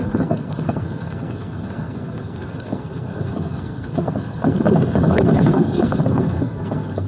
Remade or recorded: remade